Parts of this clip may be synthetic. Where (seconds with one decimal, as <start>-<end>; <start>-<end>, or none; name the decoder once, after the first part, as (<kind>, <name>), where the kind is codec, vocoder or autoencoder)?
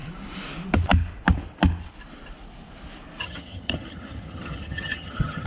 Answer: 3.2-5.5 (vocoder, HiFi-GAN)